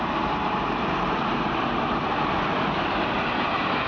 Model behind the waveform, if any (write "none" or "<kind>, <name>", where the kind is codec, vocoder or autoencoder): vocoder, BigVGAN v2